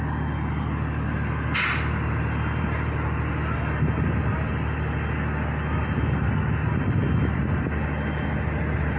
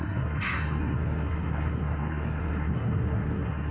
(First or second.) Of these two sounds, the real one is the first